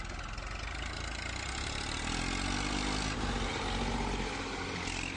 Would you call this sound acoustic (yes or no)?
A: yes